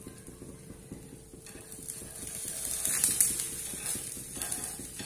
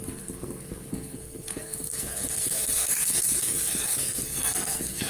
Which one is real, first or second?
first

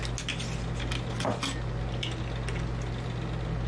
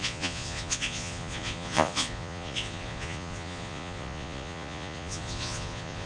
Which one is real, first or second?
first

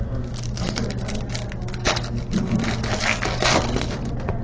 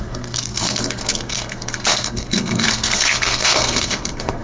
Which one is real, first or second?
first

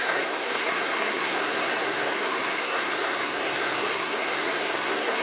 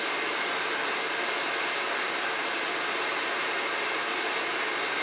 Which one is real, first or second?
second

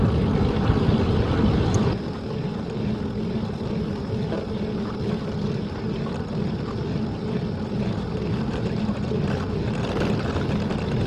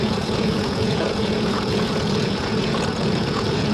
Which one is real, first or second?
first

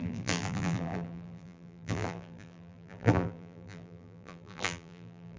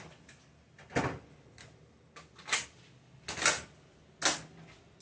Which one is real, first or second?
second